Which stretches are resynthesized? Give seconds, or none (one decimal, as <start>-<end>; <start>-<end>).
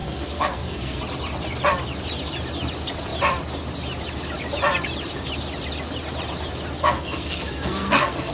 0.0-1.0; 6.8-8.3